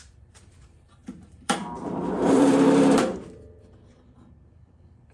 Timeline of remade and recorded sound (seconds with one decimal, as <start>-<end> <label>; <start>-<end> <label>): 0.0-5.1 remade